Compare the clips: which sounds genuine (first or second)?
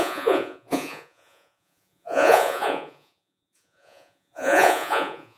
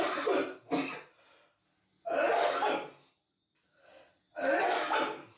second